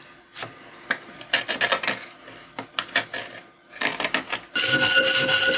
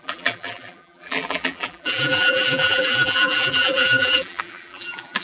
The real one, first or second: first